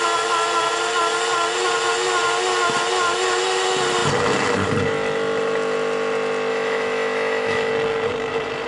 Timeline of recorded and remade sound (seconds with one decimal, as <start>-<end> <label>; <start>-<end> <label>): 0.0-6.5 recorded; 6.5-7.7 remade; 7.7-8.7 recorded